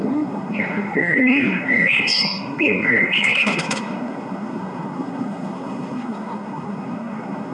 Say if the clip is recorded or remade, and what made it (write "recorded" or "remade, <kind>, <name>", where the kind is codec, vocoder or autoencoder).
remade, codec, SNAC